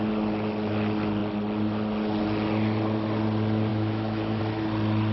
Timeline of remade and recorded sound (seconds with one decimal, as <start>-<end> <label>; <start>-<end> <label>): 0.0-3.7 recorded; 3.7-4.4 remade; 4.4-5.1 recorded